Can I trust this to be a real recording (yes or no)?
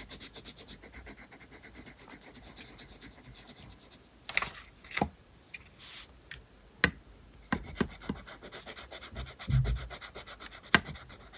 yes